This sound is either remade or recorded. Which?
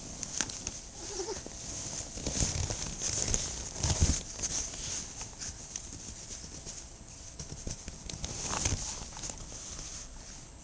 recorded